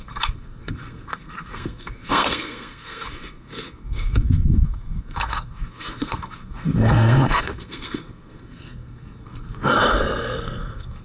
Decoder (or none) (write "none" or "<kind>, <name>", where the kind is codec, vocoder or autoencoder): codec, SNAC